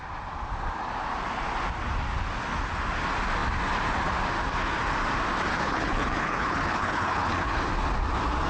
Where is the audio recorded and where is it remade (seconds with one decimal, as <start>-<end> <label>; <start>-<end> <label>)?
0.0-5.5 recorded; 5.5-7.6 remade; 7.6-8.5 recorded